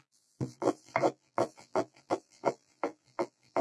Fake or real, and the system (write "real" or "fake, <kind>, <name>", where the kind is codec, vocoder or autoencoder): fake, vocoder, BigVGAN v2